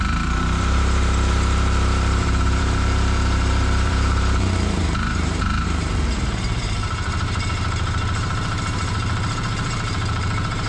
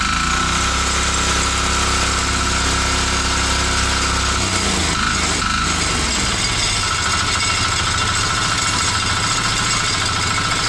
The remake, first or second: first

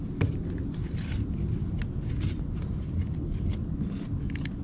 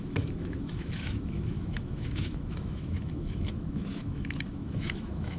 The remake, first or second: second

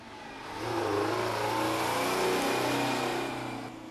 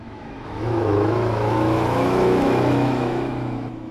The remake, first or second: second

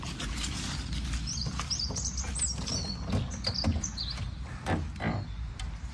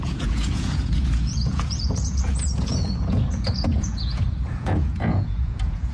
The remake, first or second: second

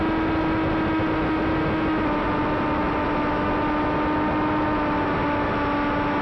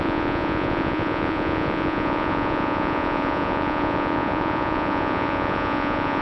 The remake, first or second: second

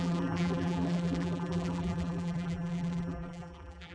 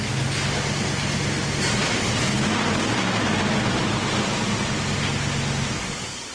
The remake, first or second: first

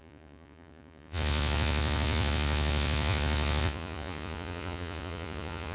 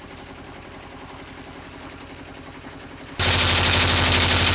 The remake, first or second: first